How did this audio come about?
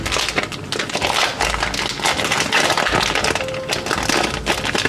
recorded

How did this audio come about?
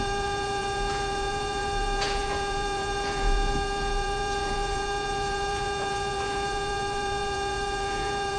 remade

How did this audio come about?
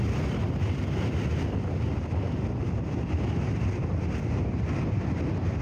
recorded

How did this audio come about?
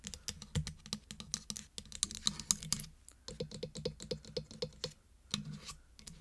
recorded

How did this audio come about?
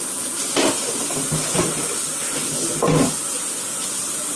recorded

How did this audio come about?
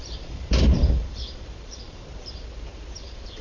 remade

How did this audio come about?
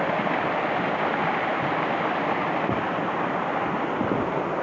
recorded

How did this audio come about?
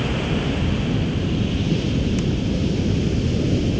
recorded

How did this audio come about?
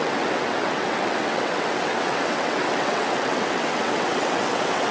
remade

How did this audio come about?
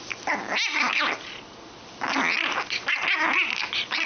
recorded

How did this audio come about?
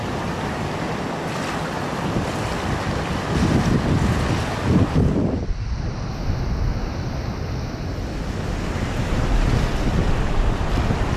recorded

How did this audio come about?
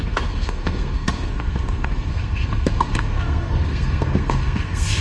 remade